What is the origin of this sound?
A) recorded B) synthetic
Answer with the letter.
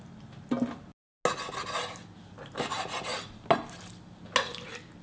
A